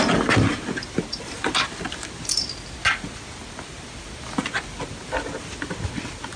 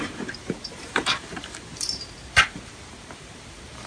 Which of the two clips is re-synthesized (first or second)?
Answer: second